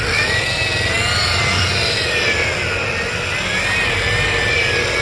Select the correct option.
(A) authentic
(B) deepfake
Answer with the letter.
A